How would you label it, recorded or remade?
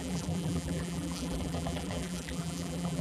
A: remade